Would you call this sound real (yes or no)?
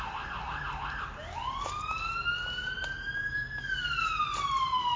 yes